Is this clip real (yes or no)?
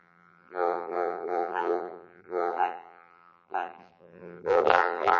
no